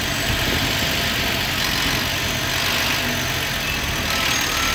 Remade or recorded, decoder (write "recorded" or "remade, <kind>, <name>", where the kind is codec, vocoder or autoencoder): recorded